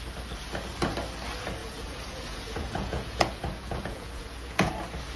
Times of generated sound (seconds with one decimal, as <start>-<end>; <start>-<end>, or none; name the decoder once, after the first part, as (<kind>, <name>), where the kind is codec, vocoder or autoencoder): 1.6-4.7 (vocoder, Vocos)